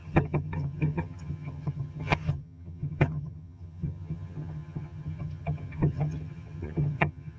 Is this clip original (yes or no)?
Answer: no